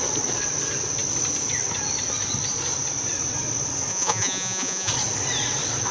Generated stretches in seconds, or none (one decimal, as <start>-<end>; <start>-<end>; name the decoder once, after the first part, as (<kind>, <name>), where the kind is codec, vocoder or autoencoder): 3.9-4.9 (vocoder, Vocos)

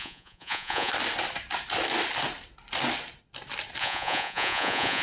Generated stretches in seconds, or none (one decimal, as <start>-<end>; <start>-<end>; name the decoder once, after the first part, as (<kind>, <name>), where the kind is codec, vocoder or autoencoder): 0.0-0.9 (vocoder, Vocos); 3.8-5.0

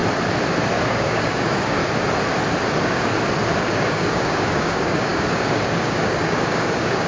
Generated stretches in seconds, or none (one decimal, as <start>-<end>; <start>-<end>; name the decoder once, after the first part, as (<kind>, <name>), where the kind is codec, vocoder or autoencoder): 0.8-1.8 (codec, DAC); 2.7-3.1; 3.6-7.1

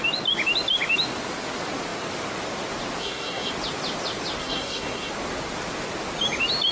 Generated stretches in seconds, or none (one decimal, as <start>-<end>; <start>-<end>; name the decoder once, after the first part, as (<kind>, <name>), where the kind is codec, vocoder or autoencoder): 3.0-3.5 (codec, SNAC); 4.4-5.1

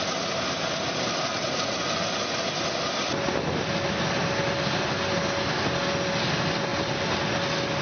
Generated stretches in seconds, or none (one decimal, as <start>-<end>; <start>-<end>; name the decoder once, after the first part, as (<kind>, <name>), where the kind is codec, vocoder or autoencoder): none